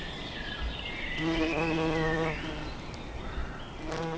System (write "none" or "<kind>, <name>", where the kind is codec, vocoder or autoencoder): none